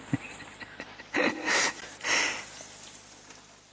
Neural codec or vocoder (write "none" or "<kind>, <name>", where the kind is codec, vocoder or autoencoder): none